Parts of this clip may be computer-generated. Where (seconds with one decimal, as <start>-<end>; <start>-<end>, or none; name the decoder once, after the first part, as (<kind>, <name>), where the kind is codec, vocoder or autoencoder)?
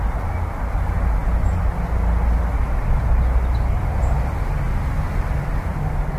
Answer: none